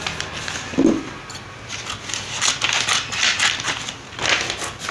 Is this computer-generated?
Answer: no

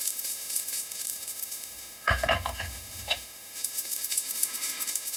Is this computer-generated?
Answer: yes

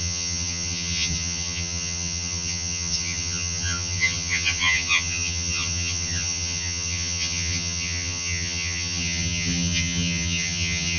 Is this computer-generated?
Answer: yes